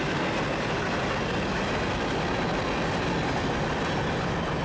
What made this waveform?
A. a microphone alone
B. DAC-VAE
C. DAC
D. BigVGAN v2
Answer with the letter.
A